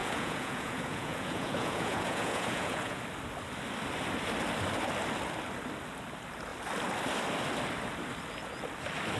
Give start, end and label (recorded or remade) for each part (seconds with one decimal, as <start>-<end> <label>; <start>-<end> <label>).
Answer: 0.0-3.0 remade; 3.0-9.2 recorded